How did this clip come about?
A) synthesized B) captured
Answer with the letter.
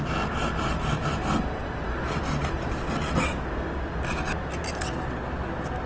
B